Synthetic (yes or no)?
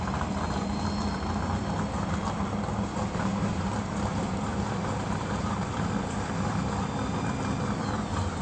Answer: no